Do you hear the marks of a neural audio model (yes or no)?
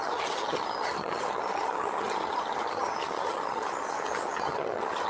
yes